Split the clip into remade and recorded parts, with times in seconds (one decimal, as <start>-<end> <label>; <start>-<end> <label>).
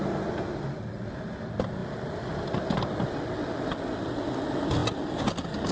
0.0-5.7 recorded